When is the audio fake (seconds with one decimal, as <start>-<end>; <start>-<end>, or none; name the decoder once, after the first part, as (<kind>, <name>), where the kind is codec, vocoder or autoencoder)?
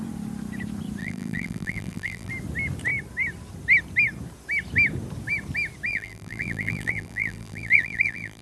1.0-2.3 (vocoder, BigVGAN v2); 5.9-8.4